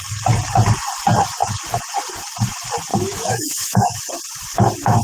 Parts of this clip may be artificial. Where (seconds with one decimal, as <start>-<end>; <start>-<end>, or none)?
2.9-4.1